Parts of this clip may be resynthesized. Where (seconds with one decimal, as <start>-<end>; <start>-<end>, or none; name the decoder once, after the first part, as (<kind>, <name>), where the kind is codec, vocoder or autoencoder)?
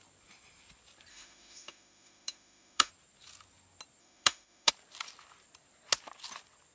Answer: 1.1-2.9 (autoencoder, DAC-VAE); 4.0-4.7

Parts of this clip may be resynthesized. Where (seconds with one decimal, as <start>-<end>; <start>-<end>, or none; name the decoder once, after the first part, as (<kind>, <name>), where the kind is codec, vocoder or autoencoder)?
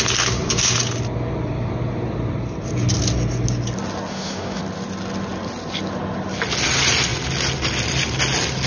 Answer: 4.1-4.6 (autoencoder, DAC-VAE)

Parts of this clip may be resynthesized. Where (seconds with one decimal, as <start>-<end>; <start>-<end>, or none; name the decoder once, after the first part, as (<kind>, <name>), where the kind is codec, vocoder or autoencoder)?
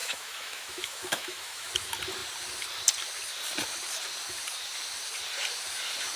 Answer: 0.0-1.7 (autoencoder, DAC-VAE)